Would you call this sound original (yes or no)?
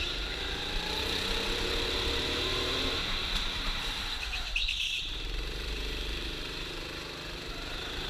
no